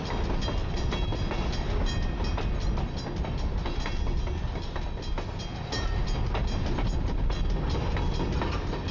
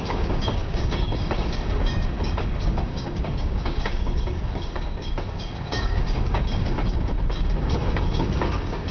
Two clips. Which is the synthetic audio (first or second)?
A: second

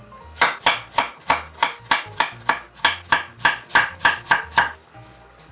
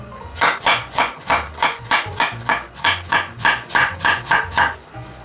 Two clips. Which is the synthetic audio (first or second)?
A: second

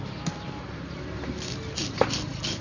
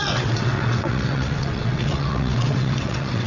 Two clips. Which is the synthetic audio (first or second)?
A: second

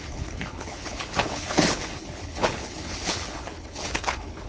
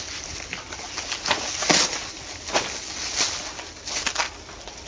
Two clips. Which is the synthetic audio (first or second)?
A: first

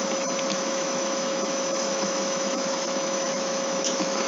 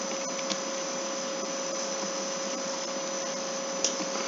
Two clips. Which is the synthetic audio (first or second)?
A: first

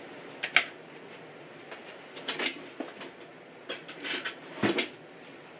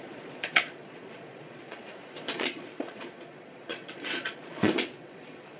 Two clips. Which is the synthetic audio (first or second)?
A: second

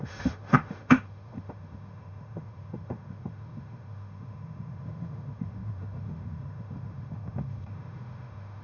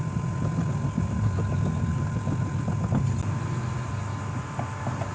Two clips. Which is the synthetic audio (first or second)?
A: first